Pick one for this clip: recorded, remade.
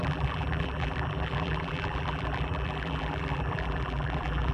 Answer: remade